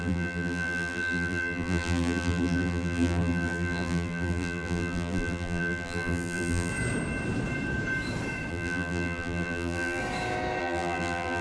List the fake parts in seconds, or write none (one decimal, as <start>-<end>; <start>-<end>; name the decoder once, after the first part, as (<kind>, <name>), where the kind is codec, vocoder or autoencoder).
0.0-6.7 (vocoder, BigVGAN v2); 8.5-10.0; 10.6-11.4